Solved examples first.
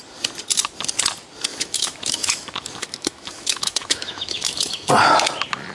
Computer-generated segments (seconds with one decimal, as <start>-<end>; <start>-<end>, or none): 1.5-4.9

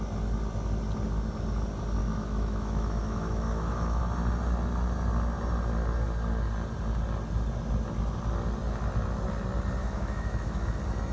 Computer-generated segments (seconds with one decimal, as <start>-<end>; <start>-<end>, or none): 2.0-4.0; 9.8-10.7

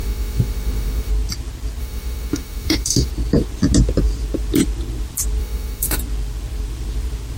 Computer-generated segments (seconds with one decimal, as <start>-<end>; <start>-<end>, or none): 0.0-1.1; 1.8-3.1; 5.4-6.0

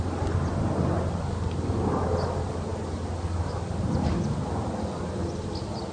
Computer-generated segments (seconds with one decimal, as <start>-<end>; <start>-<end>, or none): none

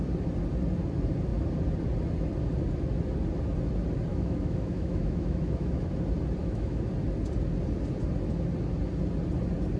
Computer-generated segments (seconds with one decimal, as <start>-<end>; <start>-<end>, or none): 4.1-5.9; 6.4-6.9